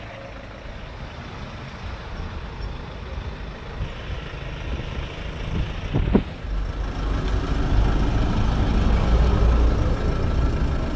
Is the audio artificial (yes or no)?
no